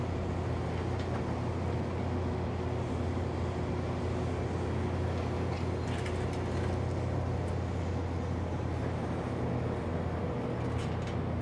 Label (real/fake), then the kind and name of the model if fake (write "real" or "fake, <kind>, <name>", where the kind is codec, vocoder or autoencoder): real